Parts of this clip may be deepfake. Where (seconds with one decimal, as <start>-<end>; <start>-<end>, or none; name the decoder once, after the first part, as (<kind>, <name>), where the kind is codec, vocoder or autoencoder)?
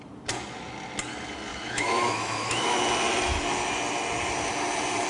1.5-2.8 (autoencoder, DAC-VAE)